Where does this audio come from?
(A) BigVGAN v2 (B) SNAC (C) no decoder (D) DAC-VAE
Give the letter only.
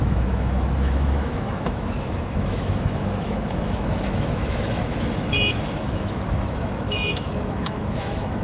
D